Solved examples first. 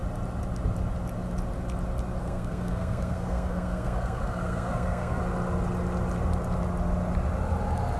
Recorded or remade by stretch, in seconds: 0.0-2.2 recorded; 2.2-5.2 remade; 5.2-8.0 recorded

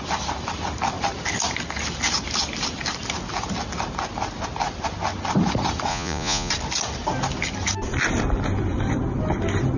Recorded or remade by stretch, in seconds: 0.0-5.9 recorded; 5.9-6.5 remade; 6.5-9.8 recorded

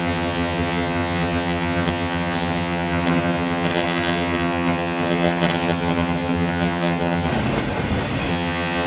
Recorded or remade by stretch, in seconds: 0.0-7.3 remade; 7.3-8.3 recorded; 8.3-8.9 remade

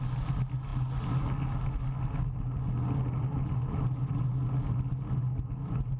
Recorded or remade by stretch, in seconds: 0.0-6.0 recorded

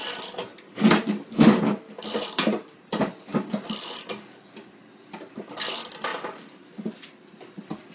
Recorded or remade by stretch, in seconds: 0.0-7.9 recorded